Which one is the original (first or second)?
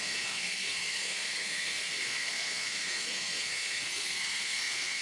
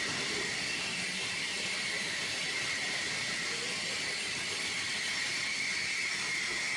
second